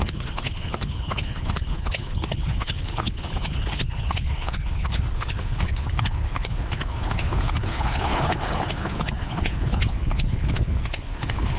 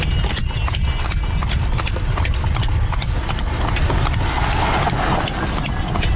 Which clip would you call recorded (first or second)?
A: second